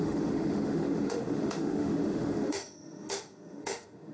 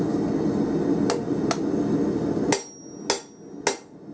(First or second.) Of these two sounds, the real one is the second